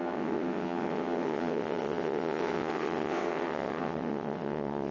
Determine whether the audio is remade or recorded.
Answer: remade